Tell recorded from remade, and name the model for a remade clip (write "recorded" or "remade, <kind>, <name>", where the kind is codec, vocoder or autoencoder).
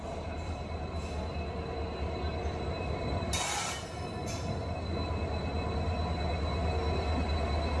recorded